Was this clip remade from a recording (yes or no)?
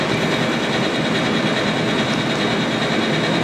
no